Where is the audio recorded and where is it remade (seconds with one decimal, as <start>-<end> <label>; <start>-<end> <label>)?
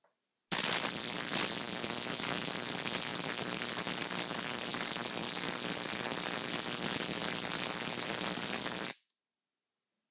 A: 0.0-3.1 recorded; 3.1-4.7 remade; 4.7-10.1 recorded